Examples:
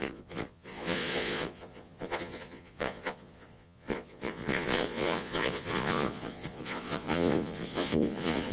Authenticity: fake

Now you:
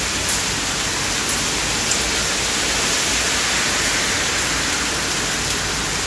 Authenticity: real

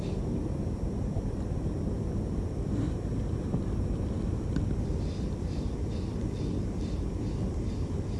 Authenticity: real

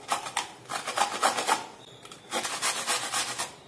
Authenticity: real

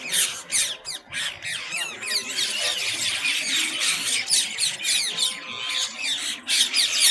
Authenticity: real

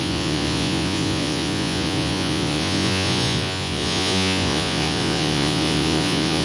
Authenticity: fake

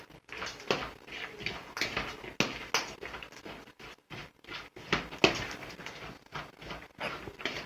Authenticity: real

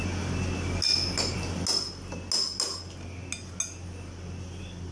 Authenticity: real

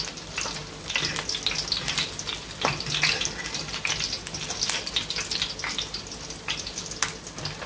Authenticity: real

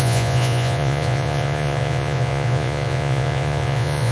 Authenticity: fake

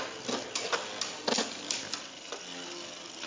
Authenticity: real